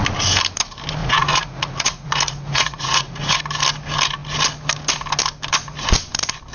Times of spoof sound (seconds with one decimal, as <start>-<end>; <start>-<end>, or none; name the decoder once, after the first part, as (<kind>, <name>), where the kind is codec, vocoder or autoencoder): 1.0-3.4 (vocoder, Vocos)